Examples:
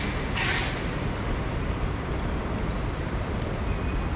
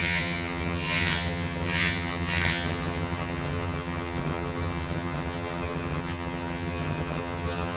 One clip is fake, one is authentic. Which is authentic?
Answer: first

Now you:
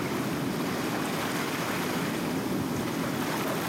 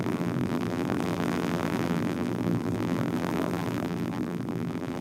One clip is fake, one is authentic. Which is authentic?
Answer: first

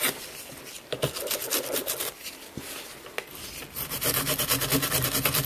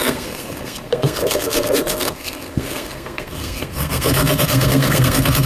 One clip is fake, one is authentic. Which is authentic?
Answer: first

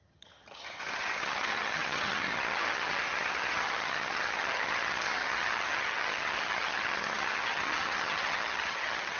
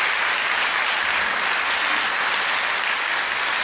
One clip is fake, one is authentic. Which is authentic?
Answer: second